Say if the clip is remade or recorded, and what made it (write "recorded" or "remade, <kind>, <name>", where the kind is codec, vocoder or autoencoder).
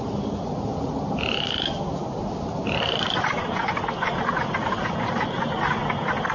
recorded